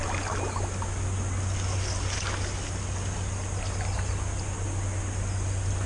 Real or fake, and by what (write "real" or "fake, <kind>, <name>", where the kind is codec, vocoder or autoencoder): real